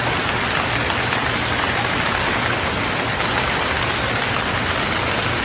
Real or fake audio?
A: real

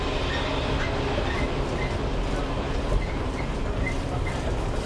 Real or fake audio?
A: real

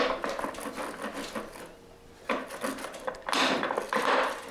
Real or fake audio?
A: real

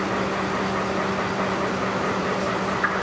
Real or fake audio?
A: real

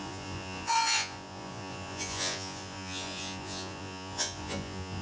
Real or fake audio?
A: fake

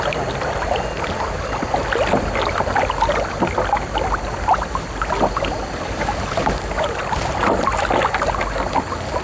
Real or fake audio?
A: real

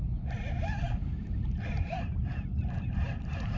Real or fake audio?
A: real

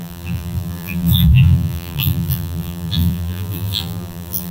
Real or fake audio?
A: fake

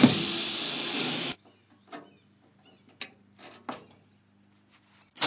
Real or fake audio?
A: real